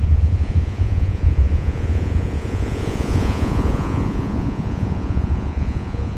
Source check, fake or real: fake